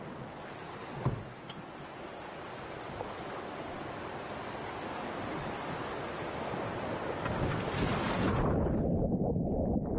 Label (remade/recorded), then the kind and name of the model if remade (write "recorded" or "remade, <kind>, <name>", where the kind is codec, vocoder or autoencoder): recorded